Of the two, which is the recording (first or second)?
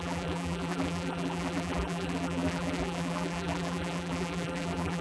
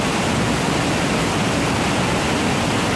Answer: second